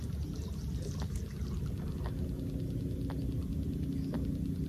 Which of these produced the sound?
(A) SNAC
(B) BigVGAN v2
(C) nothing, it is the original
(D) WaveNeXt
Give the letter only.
C